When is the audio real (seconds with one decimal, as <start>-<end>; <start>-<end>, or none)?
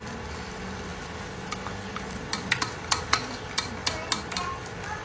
0.9-2.4; 3.8-4.4